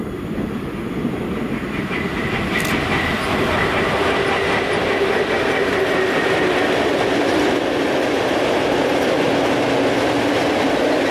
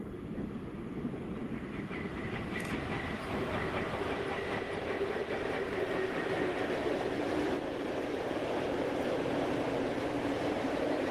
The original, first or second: first